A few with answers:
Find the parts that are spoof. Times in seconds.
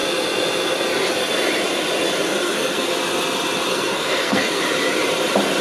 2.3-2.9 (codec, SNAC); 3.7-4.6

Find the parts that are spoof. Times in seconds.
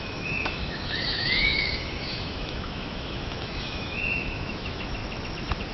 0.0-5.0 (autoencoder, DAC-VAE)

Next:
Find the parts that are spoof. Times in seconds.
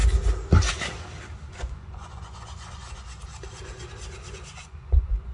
1.5-3.2 (vocoder, Vocos); 4.3-5.3